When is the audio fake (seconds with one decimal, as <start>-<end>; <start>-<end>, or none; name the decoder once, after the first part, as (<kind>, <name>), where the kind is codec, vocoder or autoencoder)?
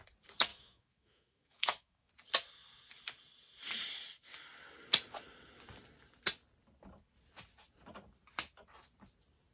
0.5-2.1 (autoencoder, DAC-VAE)